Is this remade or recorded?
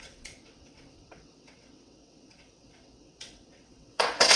remade